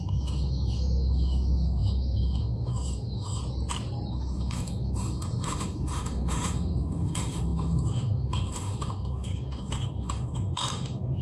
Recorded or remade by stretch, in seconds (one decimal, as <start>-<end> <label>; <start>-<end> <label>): 0.0-3.4 remade; 3.4-4.1 recorded; 4.1-11.2 remade